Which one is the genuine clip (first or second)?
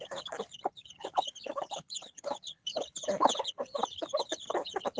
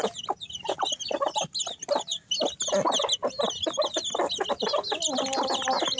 second